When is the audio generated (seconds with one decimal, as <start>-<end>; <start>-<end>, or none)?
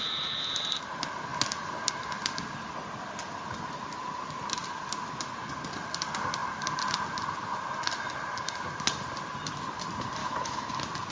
10.2-10.7